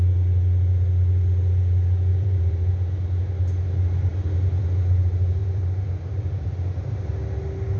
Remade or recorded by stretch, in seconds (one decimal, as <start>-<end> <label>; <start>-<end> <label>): 0.0-2.1 recorded; 2.1-2.7 remade; 2.7-5.4 recorded; 5.4-6.2 remade; 6.2-7.8 recorded